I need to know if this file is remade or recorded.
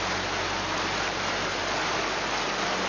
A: recorded